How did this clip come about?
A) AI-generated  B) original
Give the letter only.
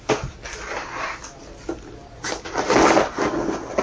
B